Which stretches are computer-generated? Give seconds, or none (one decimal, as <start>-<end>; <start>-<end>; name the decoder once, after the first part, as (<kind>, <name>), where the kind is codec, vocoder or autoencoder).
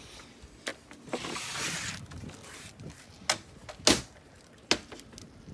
none